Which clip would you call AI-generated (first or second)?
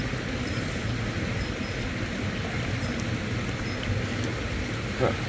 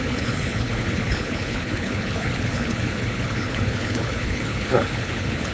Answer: second